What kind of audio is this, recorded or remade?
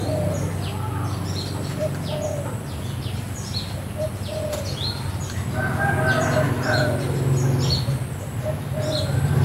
recorded